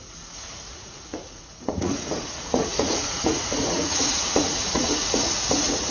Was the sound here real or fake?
fake